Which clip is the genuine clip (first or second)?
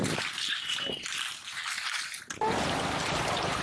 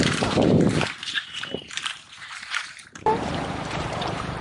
first